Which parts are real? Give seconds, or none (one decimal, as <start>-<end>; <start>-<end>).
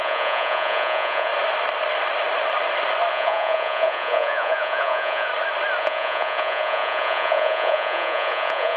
1.3-3.1; 5.3-5.8